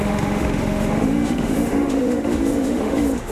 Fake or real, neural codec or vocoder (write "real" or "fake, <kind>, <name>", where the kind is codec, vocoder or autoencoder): fake, autoencoder, DAC-VAE